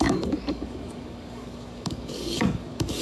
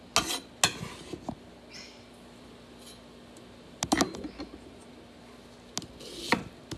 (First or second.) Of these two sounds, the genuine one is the second